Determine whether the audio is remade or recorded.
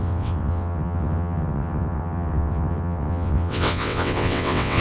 remade